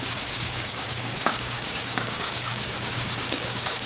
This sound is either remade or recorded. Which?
remade